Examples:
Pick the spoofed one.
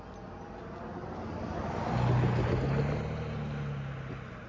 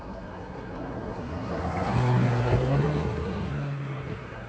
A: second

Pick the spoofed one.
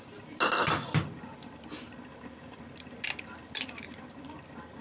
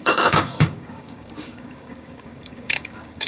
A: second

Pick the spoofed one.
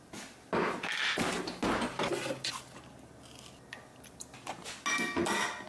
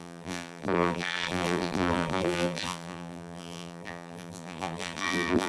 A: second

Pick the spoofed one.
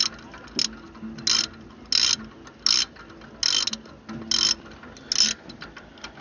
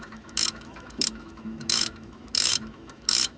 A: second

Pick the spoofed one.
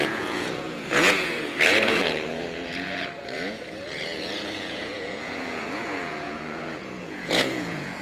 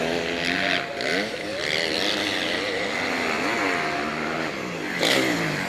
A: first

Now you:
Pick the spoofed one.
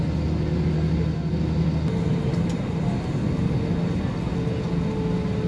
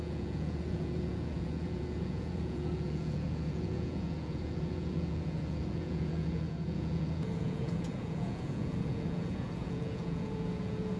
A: second